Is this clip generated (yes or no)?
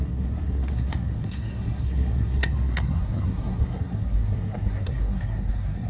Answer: yes